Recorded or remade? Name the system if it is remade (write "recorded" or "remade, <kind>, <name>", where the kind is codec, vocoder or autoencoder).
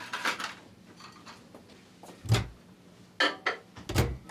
recorded